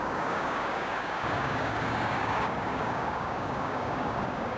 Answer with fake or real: fake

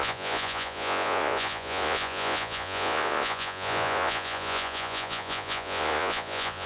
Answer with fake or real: fake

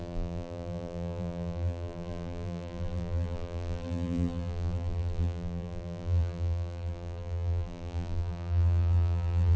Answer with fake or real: fake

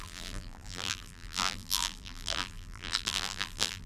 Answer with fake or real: fake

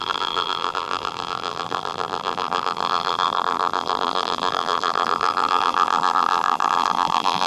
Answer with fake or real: fake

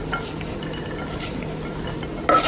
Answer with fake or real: real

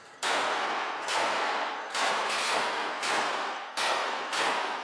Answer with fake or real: fake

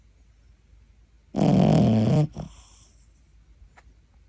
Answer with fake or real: real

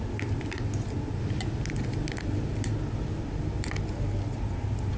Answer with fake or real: real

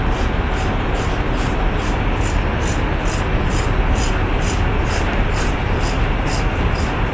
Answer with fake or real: real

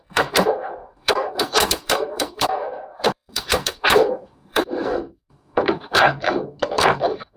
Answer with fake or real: fake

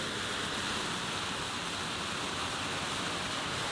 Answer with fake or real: real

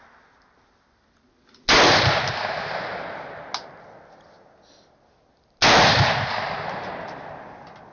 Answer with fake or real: real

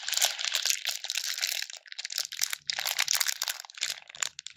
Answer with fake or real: real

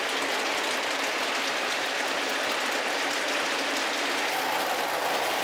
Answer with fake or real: real